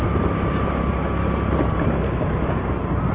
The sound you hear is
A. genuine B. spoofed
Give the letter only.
A